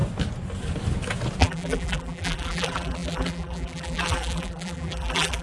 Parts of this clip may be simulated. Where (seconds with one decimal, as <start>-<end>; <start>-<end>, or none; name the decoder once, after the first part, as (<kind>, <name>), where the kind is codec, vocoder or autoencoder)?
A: 1.4-5.4 (vocoder, BigVGAN v2)